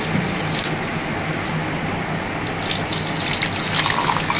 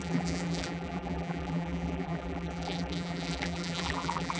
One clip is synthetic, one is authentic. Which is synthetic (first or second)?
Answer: second